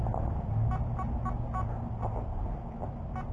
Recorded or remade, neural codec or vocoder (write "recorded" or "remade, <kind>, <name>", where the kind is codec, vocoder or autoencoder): recorded